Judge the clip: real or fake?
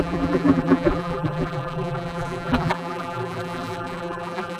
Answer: fake